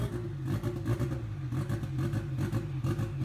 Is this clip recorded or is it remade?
recorded